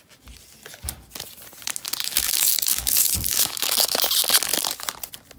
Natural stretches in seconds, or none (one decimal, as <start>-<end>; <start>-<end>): 0.0-2.0; 4.1-5.4

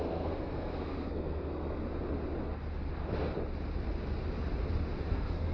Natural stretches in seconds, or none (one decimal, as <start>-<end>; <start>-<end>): 1.8-5.1

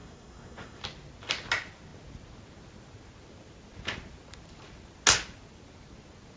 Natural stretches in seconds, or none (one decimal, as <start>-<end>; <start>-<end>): 0.8-6.4

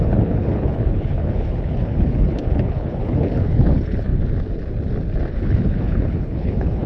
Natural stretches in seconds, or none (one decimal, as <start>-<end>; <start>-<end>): 4.1-5.3

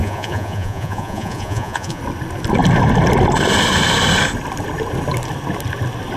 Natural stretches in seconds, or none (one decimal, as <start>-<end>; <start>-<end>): 2.0-6.2

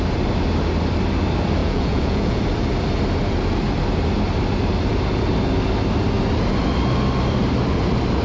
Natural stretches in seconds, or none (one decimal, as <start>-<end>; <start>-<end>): 0.0-1.6; 2.4-8.2